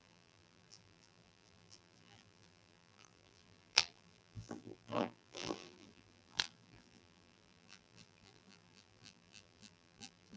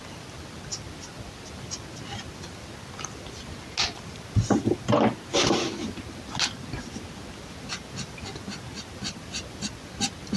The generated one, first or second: first